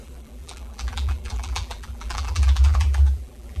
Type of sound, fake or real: fake